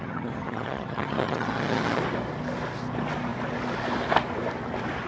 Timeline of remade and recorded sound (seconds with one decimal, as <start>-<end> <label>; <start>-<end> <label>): 0.0-2.0 remade; 2.0-5.1 recorded